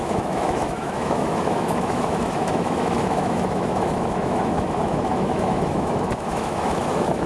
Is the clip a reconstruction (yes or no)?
yes